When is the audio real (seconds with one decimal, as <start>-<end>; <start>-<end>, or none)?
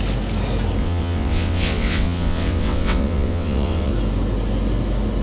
0.0-0.8; 3.9-5.2